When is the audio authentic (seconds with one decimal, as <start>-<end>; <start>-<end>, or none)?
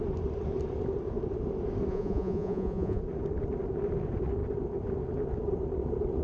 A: 0.0-1.9; 3.0-6.2